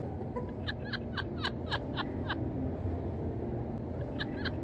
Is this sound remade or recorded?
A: recorded